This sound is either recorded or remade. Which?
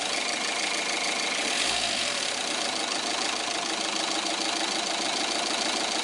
recorded